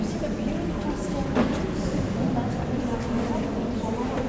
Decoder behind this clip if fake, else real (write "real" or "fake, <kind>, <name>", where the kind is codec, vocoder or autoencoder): real